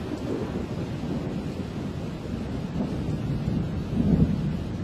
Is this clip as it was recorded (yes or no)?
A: yes